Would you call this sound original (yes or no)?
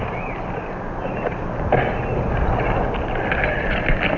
yes